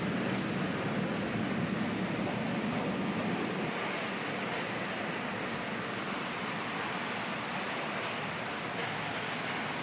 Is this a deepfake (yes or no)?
no